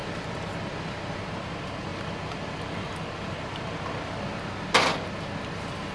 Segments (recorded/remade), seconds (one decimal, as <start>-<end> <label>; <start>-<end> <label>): 0.0-5.9 recorded